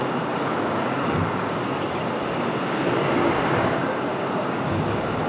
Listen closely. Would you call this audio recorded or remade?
remade